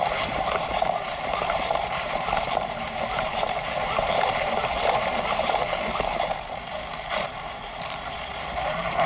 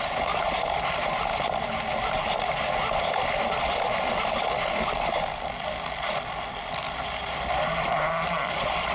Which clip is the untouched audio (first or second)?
second